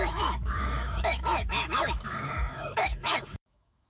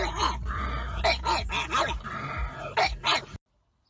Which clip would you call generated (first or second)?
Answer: first